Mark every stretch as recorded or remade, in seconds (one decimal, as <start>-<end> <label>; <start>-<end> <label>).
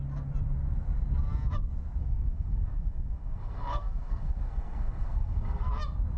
0.0-2.0 recorded; 2.0-5.7 remade; 5.7-6.2 recorded